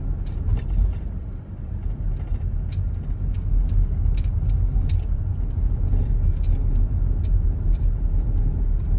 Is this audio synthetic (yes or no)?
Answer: no